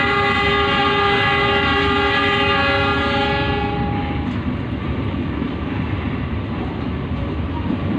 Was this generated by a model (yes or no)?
no